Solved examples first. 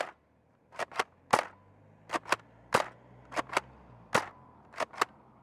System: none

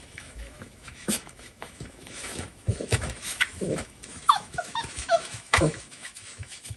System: autoencoder, DAC-VAE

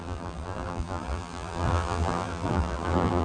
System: vocoder, BigVGAN v2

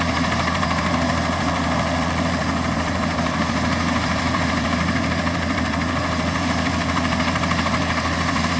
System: vocoder, BigVGAN v2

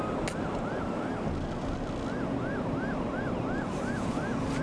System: none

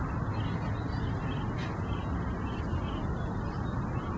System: none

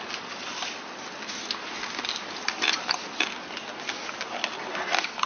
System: none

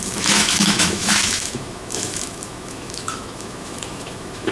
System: autoencoder, DAC-VAE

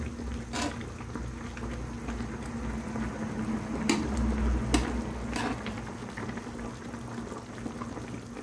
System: none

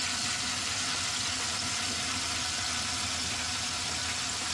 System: none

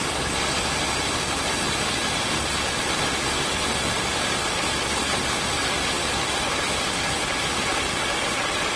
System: none